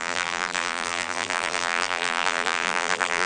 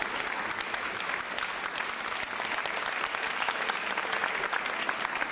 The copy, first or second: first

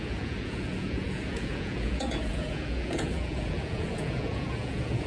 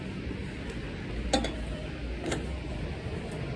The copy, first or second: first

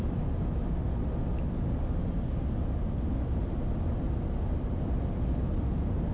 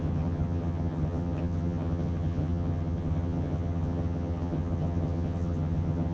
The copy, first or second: second